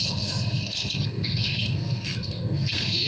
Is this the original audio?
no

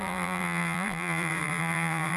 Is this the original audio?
no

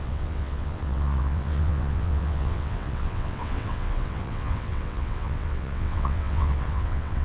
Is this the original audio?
no